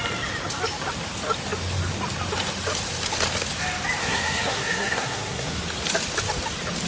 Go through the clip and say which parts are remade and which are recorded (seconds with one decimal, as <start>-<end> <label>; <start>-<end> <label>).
0.0-4.0 recorded; 4.0-5.6 remade; 5.6-6.9 recorded